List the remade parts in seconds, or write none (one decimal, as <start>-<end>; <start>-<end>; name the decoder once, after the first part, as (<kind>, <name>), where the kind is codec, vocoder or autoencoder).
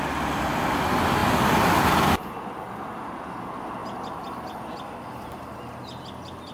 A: none